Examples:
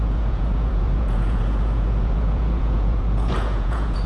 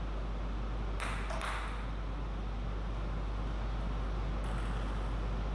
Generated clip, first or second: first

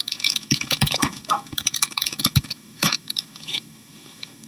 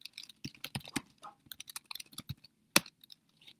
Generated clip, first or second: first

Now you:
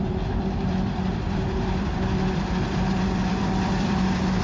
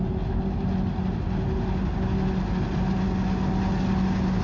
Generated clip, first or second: first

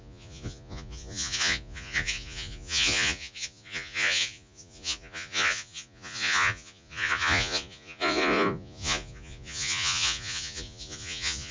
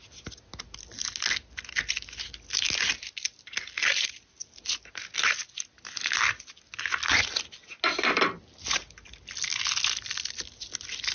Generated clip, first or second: first